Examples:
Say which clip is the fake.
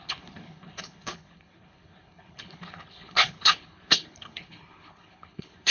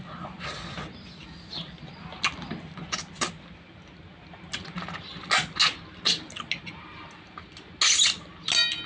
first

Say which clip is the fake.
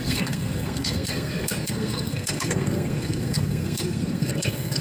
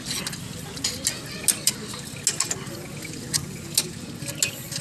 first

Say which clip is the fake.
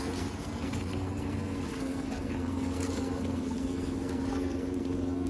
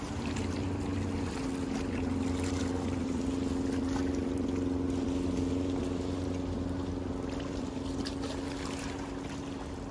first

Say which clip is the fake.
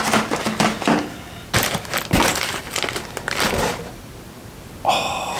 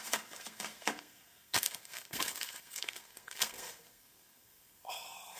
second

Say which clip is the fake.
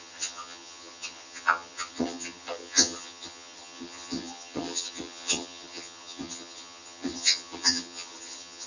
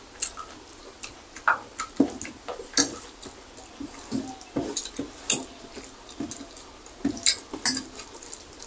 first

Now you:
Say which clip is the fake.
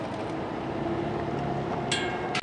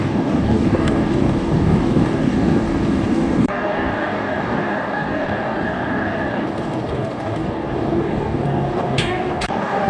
second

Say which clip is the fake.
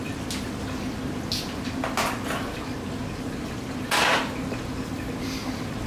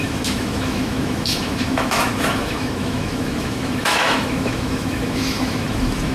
second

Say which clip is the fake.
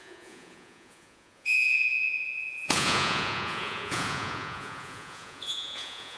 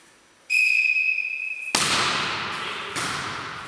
first